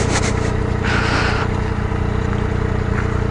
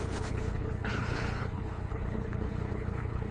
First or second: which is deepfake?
second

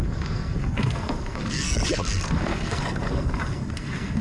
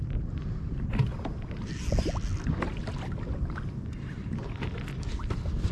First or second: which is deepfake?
first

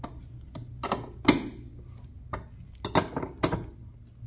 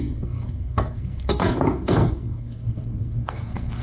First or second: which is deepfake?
second